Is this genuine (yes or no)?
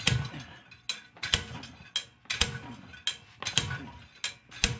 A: yes